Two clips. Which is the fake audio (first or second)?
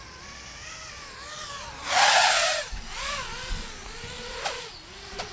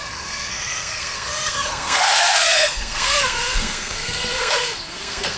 second